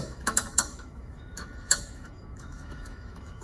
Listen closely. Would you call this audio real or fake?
fake